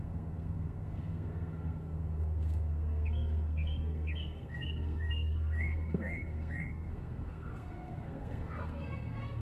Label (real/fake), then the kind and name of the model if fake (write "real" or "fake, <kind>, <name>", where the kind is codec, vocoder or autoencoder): fake, codec, SNAC